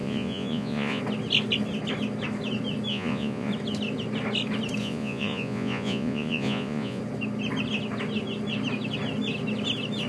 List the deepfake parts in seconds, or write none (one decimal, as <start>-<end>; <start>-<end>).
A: 0.0-1.0; 2.9-3.5; 4.8-7.0